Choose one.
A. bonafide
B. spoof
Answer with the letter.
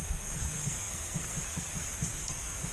B